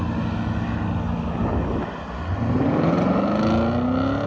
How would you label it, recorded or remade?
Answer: recorded